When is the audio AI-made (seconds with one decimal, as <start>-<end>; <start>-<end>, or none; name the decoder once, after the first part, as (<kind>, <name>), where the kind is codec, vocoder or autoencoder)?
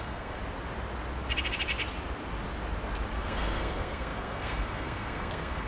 0.0-0.4 (codec, SNAC); 3.1-5.7